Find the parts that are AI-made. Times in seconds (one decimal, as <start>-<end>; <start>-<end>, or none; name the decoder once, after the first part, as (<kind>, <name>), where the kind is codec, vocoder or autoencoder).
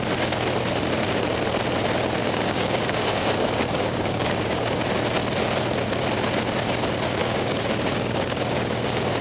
2.2-4.8 (codec, DAC); 7.2-9.2